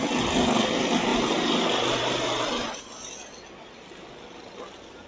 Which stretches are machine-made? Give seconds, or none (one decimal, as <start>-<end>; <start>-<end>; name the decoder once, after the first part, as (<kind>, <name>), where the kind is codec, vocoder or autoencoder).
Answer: 1.1-2.8 (vocoder, BigVGAN v2)